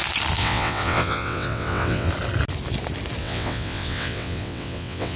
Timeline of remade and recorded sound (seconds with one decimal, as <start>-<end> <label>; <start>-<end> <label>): 0.0-0.4 recorded; 0.4-2.1 remade; 2.1-3.2 recorded; 3.2-5.2 remade